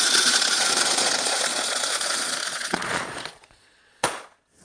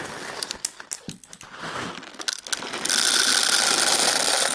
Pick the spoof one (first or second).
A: first